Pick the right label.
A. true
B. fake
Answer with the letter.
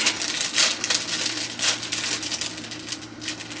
A